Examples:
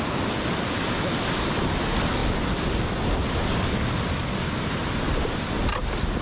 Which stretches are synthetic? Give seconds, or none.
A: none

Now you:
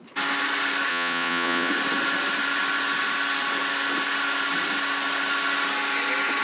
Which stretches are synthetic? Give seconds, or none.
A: 0.9-1.7 (vocoder, Vocos)

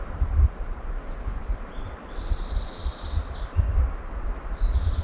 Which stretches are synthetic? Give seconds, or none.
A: none

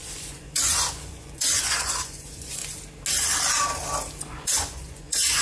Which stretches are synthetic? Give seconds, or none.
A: 0.0-2.6 (vocoder, Vocos); 4.2-5.4